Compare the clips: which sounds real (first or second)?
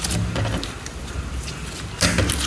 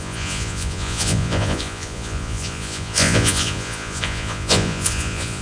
first